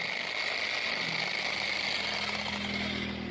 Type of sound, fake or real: real